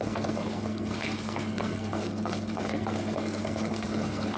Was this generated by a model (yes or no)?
yes